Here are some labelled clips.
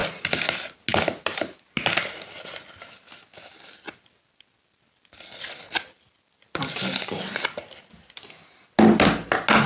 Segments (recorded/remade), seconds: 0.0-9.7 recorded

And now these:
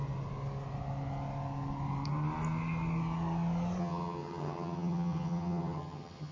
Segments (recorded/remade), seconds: 0.0-3.8 recorded; 3.8-6.3 remade

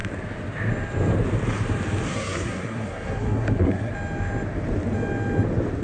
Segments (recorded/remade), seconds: 0.0-2.1 recorded; 2.1-3.9 remade; 3.9-5.8 recorded

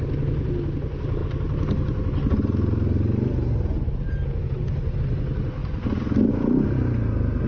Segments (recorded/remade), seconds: 0.0-7.5 recorded

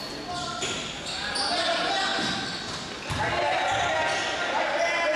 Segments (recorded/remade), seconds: 0.0-5.2 recorded